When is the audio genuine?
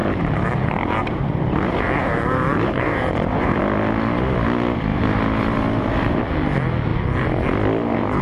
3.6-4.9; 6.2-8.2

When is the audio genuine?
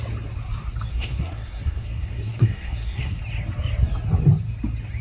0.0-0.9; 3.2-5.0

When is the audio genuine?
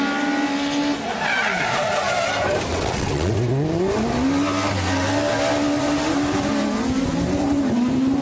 0.0-2.7; 3.3-8.2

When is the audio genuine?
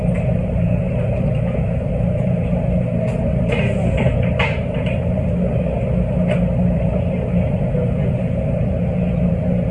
5.3-6.6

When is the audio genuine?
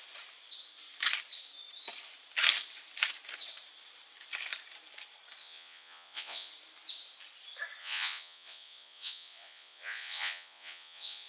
0.0-5.4; 6.5-7.8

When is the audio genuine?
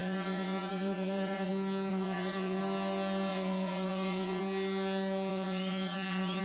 1.5-1.9; 2.6-3.3; 4.4-5.3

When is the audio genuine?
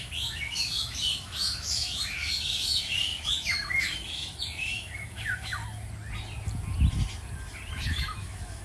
5.6-7.7